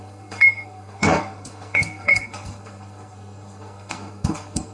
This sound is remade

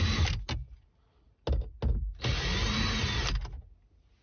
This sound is recorded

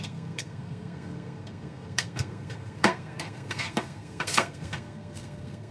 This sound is remade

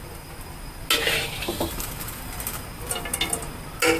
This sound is recorded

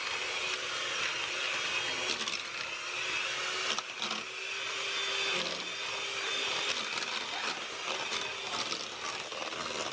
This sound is recorded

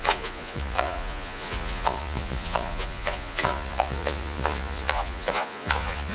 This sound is remade